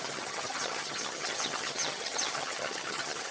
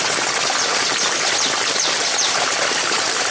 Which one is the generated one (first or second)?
first